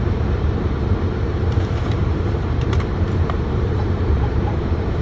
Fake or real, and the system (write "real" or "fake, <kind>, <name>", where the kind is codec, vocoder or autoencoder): fake, vocoder, BigVGAN v2